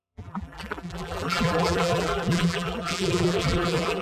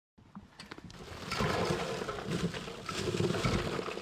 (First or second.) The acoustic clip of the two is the second